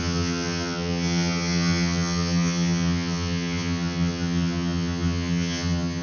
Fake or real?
fake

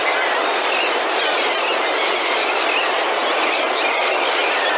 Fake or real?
real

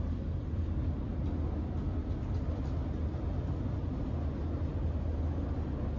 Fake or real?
real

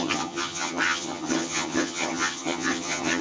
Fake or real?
fake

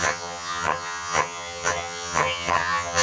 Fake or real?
fake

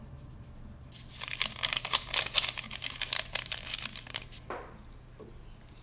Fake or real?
real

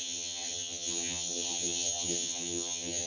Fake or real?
fake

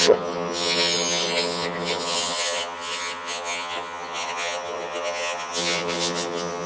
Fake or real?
fake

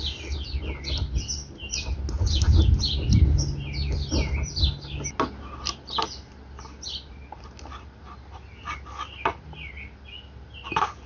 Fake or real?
real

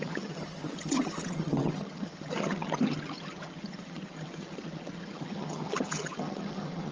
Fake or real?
fake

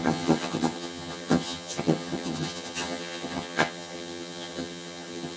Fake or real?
fake